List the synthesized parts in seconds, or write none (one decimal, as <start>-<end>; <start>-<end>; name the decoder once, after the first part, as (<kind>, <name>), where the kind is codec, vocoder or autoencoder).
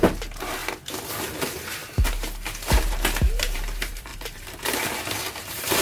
0.0-0.6 (vocoder, BigVGAN v2); 1.2-1.8; 2.7-5.8